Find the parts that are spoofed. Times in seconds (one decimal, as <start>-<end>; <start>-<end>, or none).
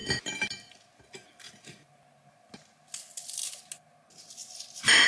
none